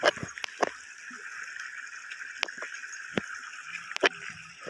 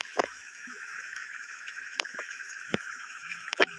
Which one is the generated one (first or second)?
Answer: second